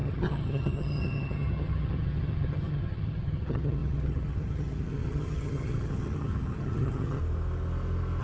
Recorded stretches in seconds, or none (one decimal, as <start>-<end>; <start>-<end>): 7.2-8.2